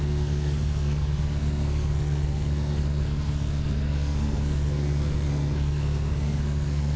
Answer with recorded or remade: remade